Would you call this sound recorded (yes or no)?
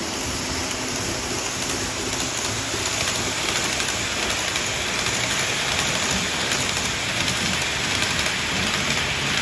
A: yes